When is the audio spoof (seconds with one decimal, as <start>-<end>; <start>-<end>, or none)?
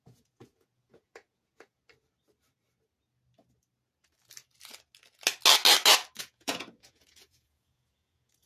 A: 0.0-1.8; 6.2-8.5